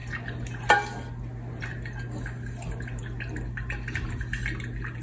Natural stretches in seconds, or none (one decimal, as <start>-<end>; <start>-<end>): 0.0-5.0